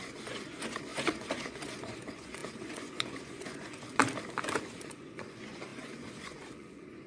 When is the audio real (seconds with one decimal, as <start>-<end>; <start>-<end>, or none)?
4.0-4.6